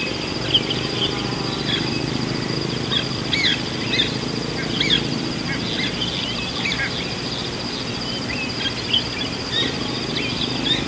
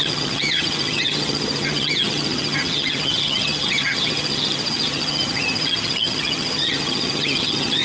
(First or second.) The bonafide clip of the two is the first